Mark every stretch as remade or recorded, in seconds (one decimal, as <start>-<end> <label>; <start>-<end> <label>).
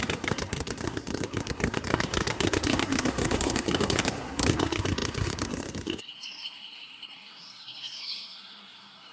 0.0-9.1 remade